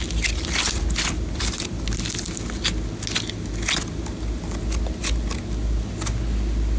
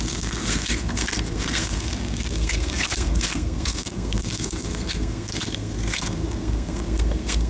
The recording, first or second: first